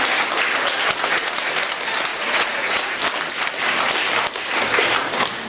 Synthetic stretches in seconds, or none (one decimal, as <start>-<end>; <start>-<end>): 0.9-1.5; 2.1-3.0

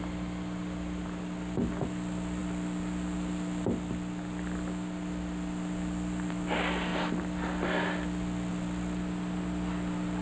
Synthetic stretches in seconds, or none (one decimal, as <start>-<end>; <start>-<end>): none

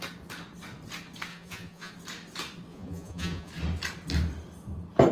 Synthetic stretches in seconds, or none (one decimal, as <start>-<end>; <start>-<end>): 1.3-1.9; 2.7-3.5

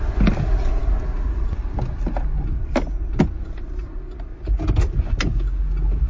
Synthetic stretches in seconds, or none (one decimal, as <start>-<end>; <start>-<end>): none

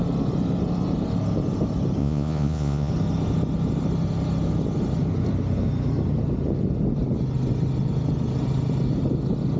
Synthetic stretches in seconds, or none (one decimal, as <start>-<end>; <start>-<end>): 2.0-2.9

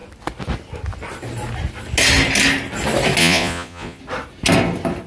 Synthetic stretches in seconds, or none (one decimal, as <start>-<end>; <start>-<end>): 3.2-4.0

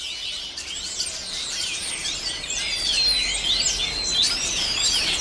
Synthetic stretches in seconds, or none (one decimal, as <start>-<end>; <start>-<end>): none

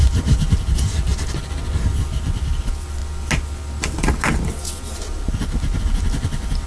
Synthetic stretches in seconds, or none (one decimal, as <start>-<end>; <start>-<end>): none